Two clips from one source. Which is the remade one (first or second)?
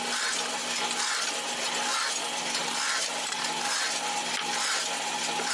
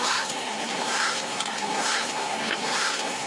second